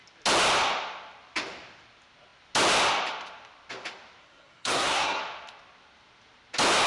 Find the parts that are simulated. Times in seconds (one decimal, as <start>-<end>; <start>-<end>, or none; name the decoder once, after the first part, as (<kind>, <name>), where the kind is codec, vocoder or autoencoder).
4.2-5.2 (codec, SNAC)